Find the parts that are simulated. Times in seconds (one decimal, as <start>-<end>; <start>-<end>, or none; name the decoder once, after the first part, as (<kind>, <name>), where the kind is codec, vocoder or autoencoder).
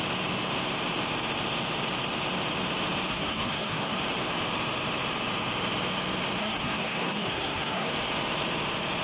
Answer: 3.1-4.0 (codec, SNAC); 6.4-7.9